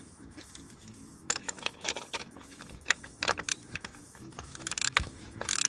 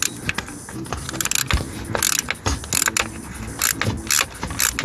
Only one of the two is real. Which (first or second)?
second